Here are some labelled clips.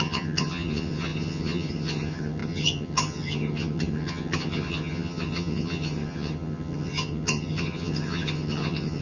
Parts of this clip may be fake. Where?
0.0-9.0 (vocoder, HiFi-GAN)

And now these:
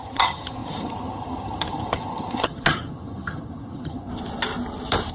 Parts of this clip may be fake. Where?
0.0-4.1 (vocoder, HiFi-GAN)